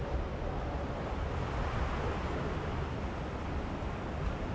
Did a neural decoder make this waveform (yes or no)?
no